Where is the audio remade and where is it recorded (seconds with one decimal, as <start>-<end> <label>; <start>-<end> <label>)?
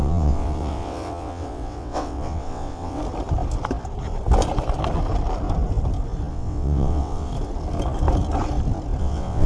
0.0-3.0 remade; 3.0-6.3 recorded; 6.3-7.3 remade; 7.3-9.0 recorded; 9.0-9.5 remade